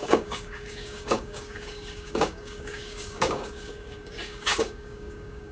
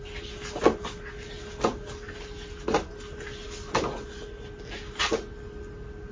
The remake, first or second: first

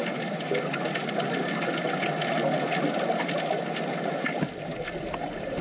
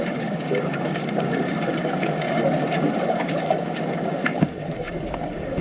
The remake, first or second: second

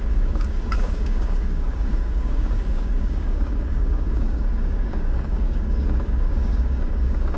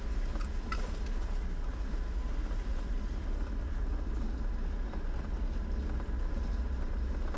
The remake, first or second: first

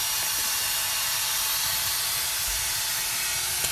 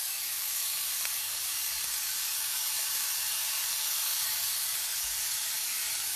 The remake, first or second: second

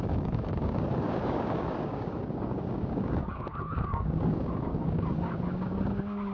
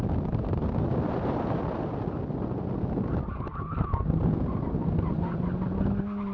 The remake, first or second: first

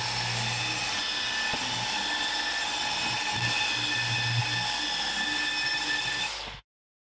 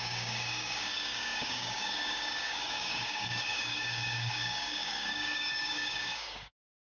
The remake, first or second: second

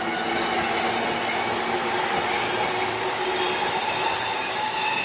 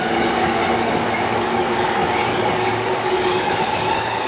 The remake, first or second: second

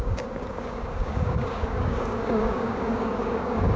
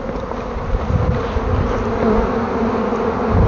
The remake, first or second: first